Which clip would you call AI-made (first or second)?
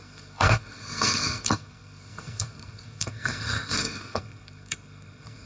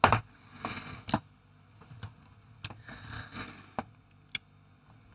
first